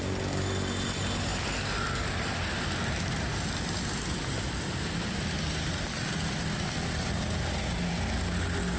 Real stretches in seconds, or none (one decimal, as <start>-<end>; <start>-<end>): 0.0-8.8

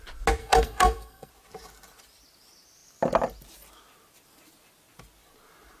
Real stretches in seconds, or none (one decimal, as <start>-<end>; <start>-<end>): 0.0-0.4; 1.3-5.8

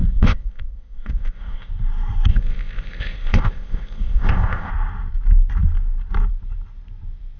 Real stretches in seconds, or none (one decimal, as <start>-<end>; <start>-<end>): 1.7-2.3; 4.7-7.4

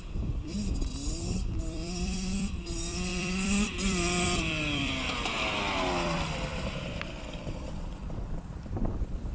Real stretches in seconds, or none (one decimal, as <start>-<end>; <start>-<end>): none

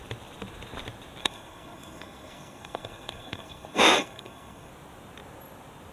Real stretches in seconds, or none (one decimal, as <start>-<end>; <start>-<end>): 0.0-1.2; 4.7-5.9

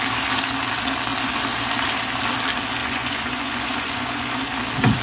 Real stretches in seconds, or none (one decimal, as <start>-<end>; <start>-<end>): 0.0-2.8; 4.4-5.0